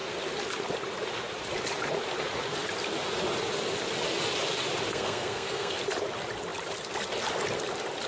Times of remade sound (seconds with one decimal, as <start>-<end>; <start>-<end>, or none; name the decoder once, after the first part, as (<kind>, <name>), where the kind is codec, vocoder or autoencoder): 4.9-5.8 (codec, SNAC)